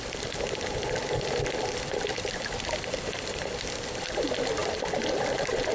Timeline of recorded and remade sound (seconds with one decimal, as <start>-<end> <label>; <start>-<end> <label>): 0.0-5.7 recorded